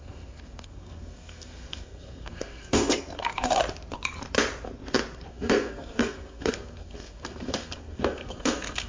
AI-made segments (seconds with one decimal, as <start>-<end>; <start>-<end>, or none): 0.0-3.6; 5.3-8.9

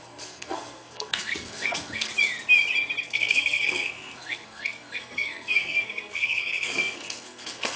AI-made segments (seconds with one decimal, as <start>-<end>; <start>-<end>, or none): 0.0-2.1; 3.0-7.8

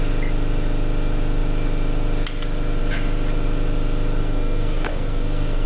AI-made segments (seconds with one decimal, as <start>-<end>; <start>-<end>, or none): 4.2-5.7

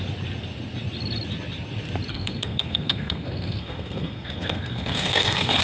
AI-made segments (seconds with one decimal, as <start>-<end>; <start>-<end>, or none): 2.1-5.6

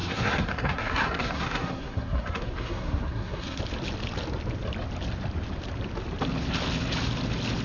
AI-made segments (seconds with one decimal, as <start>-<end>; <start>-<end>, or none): 0.0-3.6

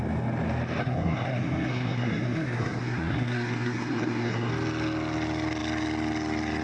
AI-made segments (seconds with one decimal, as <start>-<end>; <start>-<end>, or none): 0.8-4.5

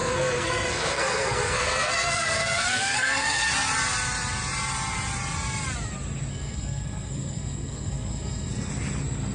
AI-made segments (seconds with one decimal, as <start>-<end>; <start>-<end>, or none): 0.0-3.4; 6.3-8.7